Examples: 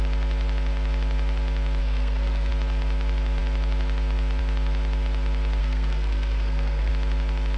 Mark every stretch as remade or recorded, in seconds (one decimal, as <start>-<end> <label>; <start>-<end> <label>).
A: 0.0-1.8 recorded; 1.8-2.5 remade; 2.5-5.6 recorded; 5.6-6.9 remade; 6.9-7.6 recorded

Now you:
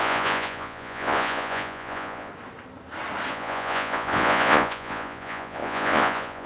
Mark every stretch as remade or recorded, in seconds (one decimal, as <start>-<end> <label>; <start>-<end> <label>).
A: 0.0-2.3 remade; 2.3-3.3 recorded; 3.3-6.5 remade

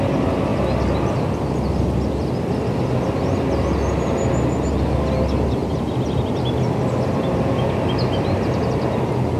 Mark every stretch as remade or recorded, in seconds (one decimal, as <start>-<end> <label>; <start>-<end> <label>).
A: 0.0-9.4 remade